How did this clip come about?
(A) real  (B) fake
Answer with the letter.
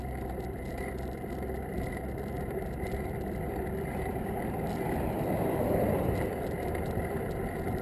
B